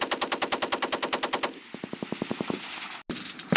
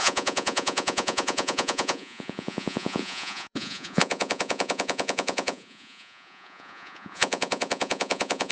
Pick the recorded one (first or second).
first